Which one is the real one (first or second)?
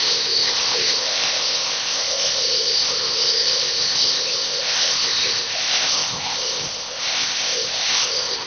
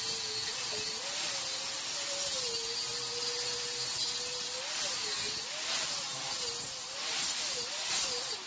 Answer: second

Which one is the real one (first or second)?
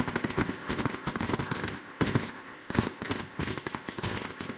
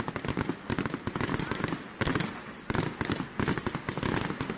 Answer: second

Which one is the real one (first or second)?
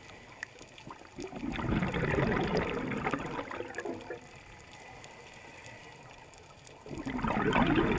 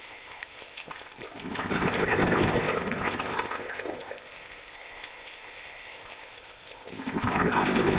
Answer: first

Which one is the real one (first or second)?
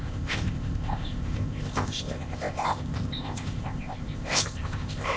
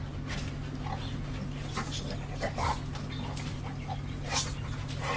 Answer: second